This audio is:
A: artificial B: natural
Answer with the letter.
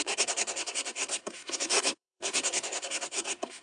A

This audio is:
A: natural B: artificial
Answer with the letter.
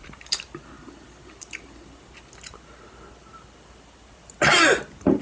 A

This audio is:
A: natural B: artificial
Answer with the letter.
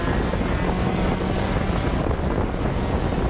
A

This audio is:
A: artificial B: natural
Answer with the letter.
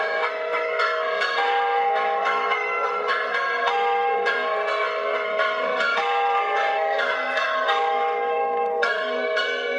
A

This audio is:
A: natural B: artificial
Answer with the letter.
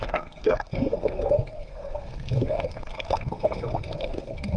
B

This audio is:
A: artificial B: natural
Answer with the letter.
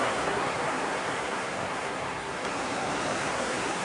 A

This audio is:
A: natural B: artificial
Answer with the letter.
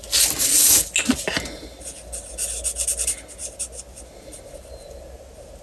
A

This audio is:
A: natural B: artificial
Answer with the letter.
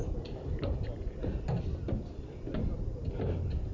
A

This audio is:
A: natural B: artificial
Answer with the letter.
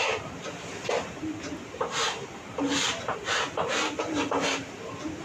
A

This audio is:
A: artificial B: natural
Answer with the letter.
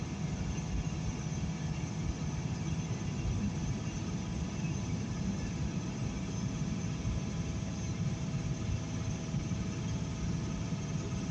B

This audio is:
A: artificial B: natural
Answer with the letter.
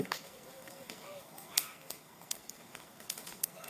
A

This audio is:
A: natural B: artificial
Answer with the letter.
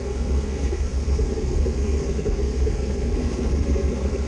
B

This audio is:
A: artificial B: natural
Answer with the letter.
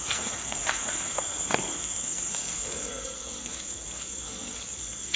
A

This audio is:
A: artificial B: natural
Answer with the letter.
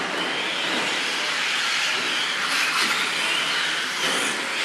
B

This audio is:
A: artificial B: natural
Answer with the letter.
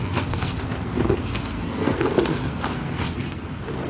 A